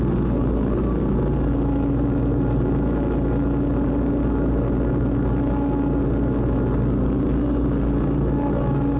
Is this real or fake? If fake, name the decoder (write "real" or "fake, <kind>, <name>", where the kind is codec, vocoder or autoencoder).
real